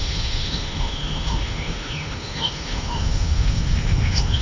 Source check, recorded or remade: remade